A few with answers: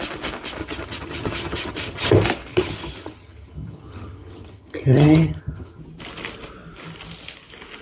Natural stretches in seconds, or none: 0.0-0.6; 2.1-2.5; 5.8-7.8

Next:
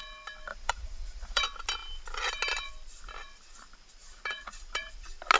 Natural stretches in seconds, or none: 0.0-0.5; 1.4-4.0; 4.9-5.4

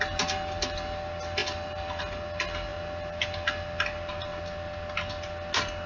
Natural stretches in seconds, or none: 0.0-5.9

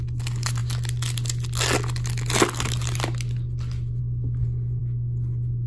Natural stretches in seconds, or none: 0.0-5.7